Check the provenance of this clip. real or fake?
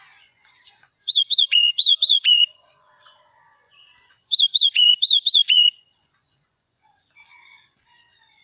fake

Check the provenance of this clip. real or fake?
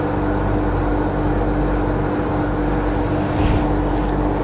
real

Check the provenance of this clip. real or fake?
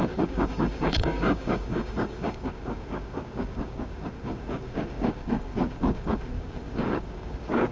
fake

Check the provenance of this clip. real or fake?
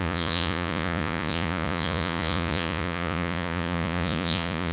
fake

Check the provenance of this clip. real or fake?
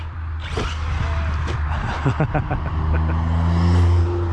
real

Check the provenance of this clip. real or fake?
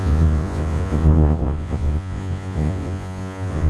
fake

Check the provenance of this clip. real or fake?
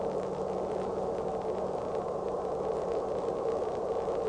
real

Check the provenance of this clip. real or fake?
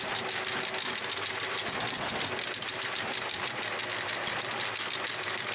real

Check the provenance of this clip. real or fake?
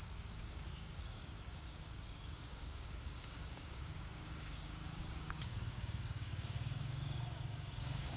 fake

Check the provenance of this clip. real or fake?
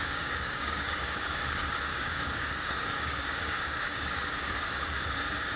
fake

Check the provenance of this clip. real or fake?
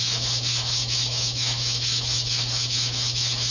fake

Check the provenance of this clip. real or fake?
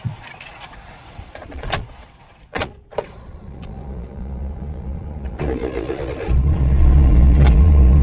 fake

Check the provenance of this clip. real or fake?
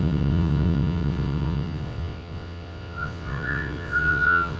fake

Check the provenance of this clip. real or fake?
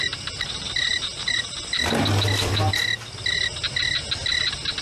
real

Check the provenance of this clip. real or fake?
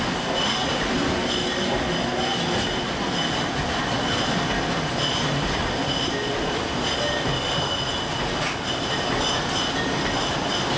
real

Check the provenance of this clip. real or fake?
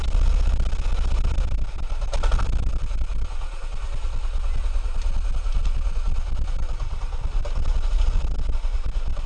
real